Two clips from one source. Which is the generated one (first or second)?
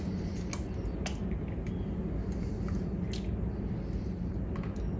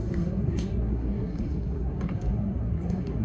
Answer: second